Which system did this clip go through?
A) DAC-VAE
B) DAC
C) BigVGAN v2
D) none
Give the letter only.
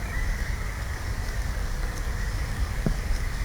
B